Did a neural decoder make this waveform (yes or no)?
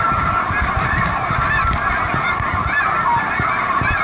no